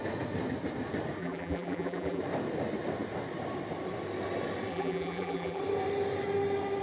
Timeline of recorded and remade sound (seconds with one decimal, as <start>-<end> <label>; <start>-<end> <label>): 0.0-1.2 recorded; 1.2-2.2 remade; 2.2-4.7 recorded; 4.7-5.6 remade; 5.6-6.8 recorded